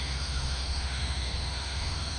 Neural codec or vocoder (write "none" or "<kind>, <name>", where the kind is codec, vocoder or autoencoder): autoencoder, DAC-VAE